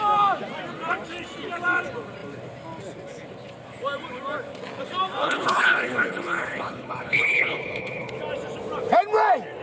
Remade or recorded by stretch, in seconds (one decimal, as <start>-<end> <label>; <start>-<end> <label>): 0.0-5.2 recorded; 5.2-8.1 remade; 8.1-9.6 recorded